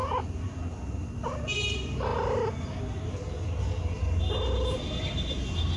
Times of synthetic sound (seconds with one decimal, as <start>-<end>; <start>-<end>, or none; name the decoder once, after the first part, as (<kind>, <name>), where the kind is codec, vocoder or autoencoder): none